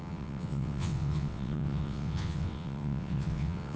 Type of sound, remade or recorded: remade